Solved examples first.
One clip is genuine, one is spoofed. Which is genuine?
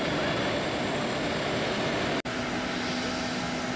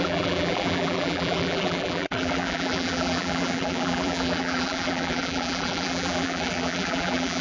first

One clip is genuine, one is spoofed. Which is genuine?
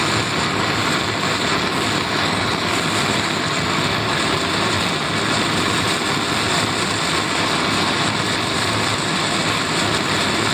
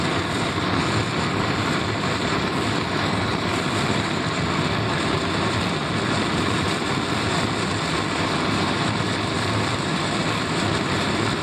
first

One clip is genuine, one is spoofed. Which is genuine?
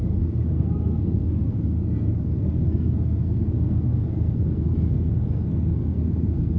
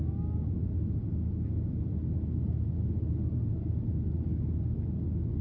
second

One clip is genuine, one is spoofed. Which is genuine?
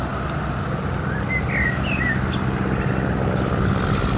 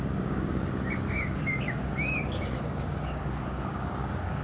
first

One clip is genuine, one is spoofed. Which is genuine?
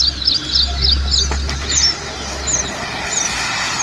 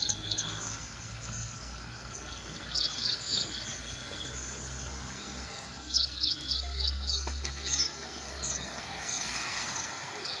first